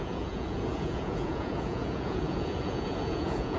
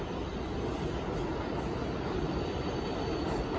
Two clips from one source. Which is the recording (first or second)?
second